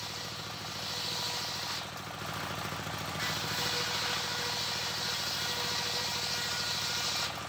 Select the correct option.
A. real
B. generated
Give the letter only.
A